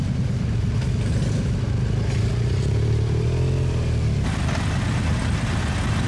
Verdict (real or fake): real